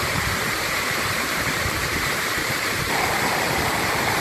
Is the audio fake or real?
fake